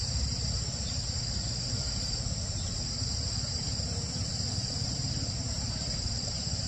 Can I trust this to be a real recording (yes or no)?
no